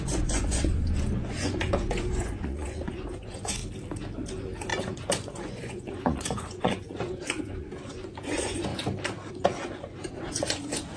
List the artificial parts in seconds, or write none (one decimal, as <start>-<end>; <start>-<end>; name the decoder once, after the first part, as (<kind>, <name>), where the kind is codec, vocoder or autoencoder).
0.0-3.6 (vocoder, Vocos); 4.3-8.7; 9.3-11.0